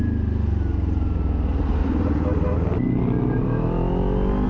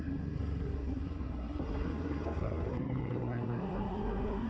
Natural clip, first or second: first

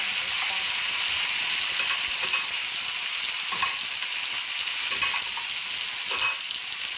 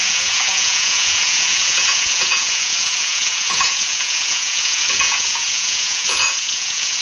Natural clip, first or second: first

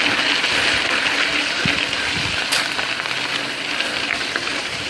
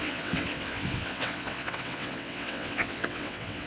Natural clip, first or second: first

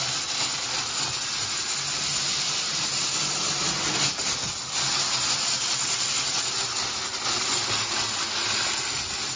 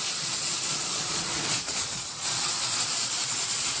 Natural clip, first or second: first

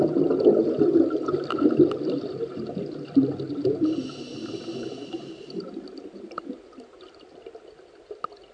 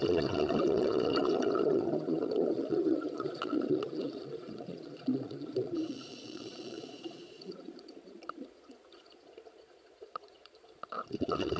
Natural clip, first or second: first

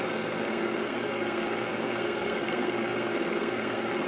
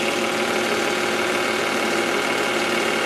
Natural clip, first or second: second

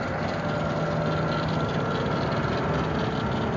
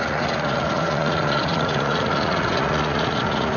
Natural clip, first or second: first